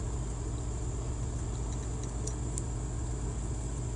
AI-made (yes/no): no